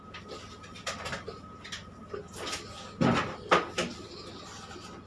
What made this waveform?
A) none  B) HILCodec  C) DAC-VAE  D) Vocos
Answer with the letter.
A